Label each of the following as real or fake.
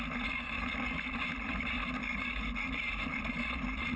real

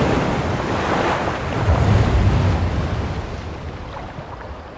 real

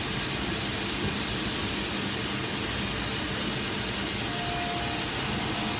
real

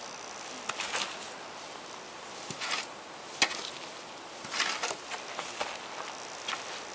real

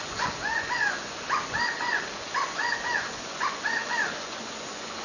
fake